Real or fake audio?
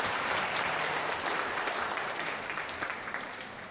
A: fake